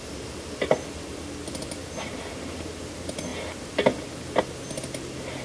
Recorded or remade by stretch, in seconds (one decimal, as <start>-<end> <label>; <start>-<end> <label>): 0.0-5.4 recorded

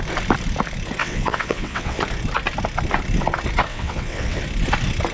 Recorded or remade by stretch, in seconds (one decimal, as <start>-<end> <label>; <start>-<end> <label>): 0.0-1.0 recorded; 1.0-2.0 remade; 2.0-3.7 recorded; 3.7-4.4 remade; 4.4-5.1 recorded

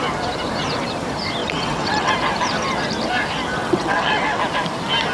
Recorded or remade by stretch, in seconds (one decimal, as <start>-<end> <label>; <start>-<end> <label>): 0.0-1.4 recorded; 1.4-2.1 remade; 2.1-3.6 recorded; 3.6-4.4 remade; 4.4-5.1 recorded